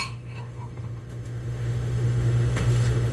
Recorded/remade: remade